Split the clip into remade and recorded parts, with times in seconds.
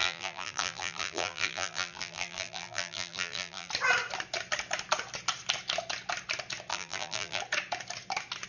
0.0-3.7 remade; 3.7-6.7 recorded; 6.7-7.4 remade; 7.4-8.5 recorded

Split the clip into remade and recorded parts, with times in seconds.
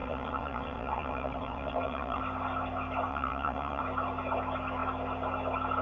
0.0-2.2 remade; 2.2-3.1 recorded; 3.1-3.8 remade; 3.8-5.8 recorded